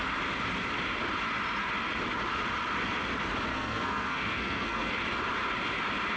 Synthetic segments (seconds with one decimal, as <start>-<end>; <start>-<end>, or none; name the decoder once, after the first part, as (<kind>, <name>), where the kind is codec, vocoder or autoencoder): 3.5-4.9 (codec, SNAC)